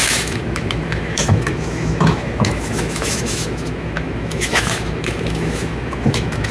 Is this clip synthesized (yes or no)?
yes